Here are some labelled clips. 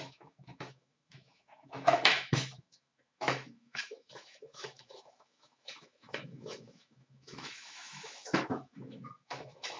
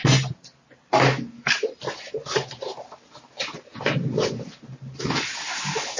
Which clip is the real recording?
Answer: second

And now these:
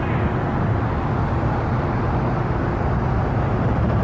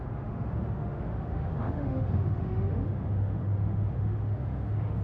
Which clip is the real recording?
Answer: first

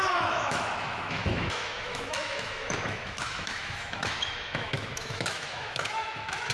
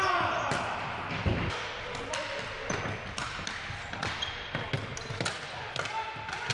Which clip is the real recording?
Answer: second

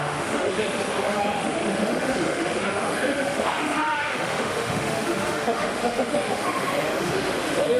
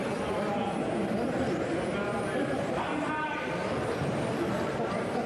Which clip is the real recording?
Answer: second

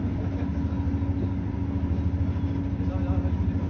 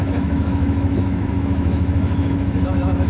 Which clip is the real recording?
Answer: first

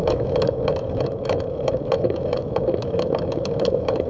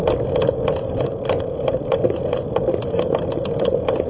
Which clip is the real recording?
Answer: second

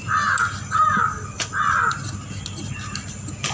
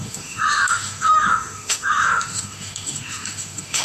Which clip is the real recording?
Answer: first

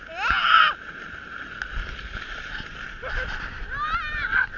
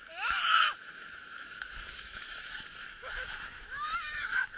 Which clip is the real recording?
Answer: first